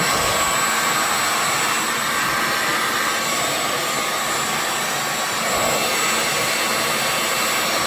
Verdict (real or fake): real